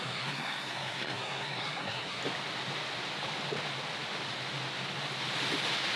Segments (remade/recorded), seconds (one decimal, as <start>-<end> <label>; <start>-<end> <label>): 0.0-2.2 remade; 2.2-6.0 recorded